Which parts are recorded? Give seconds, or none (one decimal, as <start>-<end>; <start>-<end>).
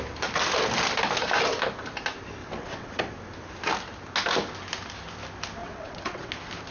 0.0-2.4; 3.0-5.6; 6.3-6.7